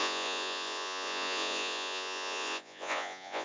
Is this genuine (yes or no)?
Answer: no